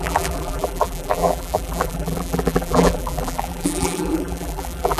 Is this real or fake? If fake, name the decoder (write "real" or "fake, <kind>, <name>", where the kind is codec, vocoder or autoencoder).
fake, vocoder, BigVGAN v2